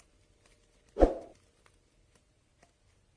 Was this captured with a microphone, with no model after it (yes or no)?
yes